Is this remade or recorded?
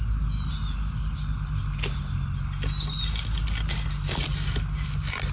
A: recorded